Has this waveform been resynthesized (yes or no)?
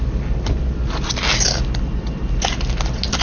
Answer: no